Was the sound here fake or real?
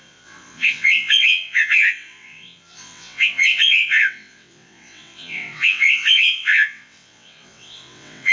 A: fake